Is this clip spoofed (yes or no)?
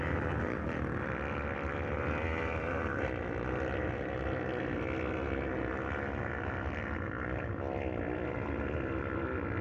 no